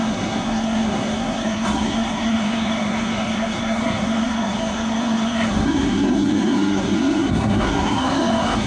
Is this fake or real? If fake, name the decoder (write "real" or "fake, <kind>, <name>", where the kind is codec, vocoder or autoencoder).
fake, codec, SNAC